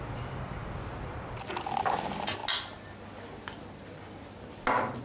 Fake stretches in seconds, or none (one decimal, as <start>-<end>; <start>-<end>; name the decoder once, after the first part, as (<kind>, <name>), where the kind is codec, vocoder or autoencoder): none